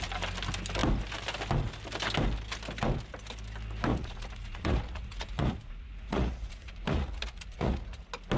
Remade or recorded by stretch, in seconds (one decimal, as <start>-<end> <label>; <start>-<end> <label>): 0.0-3.9 recorded; 3.9-8.0 remade; 8.0-8.4 recorded